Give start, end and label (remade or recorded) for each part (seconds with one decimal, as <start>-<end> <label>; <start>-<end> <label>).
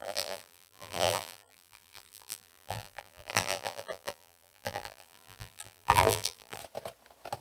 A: 0.0-6.6 remade; 6.6-7.4 recorded